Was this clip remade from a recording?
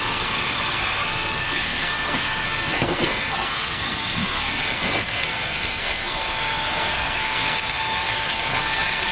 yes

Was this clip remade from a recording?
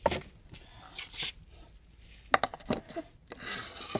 no